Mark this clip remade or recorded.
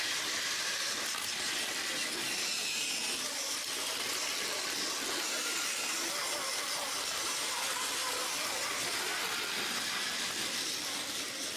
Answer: recorded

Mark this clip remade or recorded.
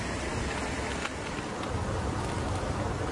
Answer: recorded